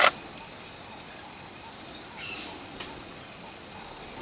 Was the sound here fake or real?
real